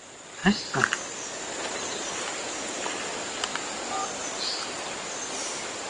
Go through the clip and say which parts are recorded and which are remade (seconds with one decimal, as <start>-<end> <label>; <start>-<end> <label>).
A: 0.0-0.4 remade; 0.4-3.7 recorded; 3.7-5.9 remade

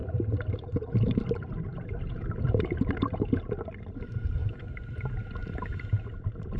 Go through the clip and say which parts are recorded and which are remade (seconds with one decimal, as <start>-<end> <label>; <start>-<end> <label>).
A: 0.0-3.3 remade; 3.3-4.4 recorded; 4.4-4.9 remade; 4.9-6.6 recorded

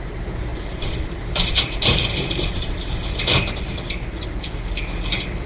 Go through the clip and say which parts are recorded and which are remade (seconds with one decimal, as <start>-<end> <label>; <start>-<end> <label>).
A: 0.0-0.5 recorded; 0.5-3.1 remade; 3.1-5.5 recorded

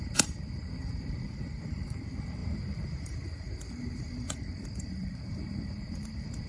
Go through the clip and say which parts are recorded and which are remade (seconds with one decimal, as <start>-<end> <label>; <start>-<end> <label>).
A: 0.0-6.5 remade

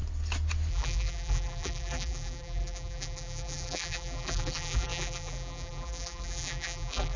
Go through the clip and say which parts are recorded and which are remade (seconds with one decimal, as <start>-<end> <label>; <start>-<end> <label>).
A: 0.0-0.7 recorded; 0.7-7.2 remade